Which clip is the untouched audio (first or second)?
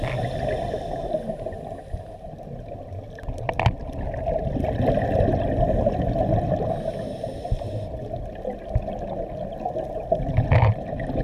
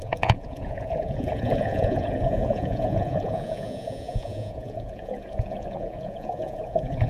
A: first